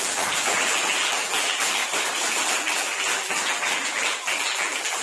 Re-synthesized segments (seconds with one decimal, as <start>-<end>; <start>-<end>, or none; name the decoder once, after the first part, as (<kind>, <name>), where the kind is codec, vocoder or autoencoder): 0.0-1.8 (vocoder, BigVGAN v2); 2.3-5.0